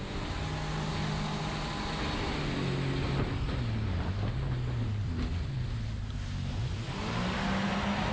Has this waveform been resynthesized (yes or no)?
no